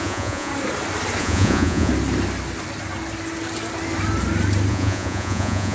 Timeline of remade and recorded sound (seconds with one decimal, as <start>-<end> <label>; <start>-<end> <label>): 0.0-0.5 remade; 0.5-1.2 recorded; 1.2-1.9 remade; 1.9-4.7 recorded; 4.7-5.7 remade

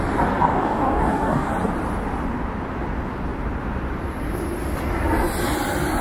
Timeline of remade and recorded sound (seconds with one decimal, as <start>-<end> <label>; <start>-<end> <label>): 0.0-0.5 recorded; 0.5-1.5 remade; 1.5-6.0 recorded

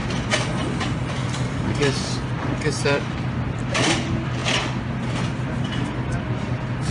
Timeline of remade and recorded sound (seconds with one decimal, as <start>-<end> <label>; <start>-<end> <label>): 0.0-4.4 remade; 4.4-5.1 recorded; 5.1-6.9 remade